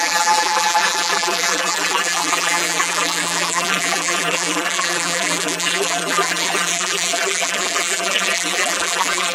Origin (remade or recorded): remade